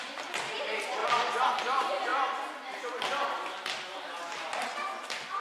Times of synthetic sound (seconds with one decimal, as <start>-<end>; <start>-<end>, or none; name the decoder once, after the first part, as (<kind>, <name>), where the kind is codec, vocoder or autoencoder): none